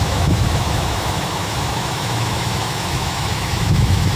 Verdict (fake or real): fake